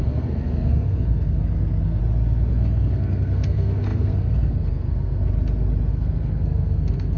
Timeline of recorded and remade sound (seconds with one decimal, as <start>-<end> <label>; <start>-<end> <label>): 0.0-2.0 remade; 2.0-2.5 recorded; 2.5-5.2 remade; 5.2-5.9 recorded; 5.9-7.2 remade